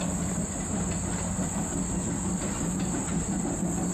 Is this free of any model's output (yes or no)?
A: yes